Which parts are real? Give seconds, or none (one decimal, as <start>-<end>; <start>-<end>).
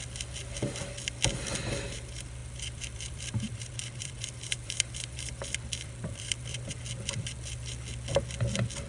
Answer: 0.0-2.4; 6.7-8.9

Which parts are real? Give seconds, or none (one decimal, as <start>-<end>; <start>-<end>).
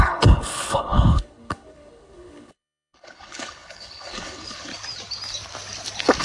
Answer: 4.7-6.2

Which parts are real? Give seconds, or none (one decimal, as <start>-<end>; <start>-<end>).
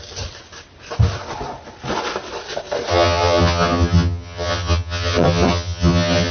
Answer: 0.0-2.9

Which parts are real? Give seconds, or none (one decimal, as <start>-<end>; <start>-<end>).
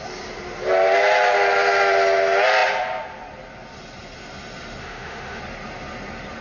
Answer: 0.0-4.8; 5.4-6.4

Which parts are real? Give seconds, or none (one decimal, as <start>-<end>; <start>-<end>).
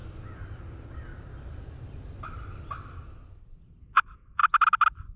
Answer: 0.0-5.2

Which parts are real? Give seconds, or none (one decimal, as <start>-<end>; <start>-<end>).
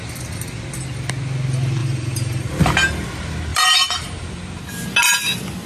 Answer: 0.0-1.8; 2.5-3.5; 4.6-5.7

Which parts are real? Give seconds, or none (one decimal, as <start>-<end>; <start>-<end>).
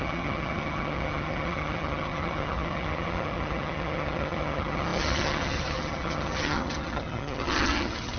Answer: none